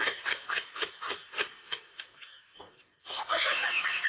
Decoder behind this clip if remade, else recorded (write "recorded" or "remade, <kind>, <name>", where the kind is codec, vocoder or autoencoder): remade, codec, DAC